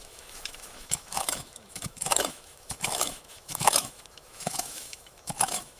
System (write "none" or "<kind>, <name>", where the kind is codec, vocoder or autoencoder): autoencoder, DAC-VAE